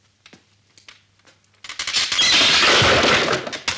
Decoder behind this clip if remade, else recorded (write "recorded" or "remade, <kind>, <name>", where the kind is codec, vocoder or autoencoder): recorded